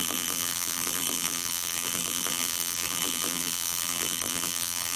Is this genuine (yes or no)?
no